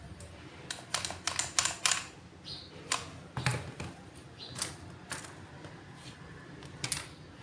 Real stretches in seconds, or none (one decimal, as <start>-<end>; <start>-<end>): 0.0-7.4